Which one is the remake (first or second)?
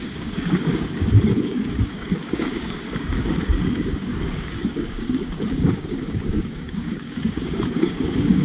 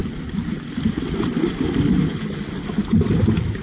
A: first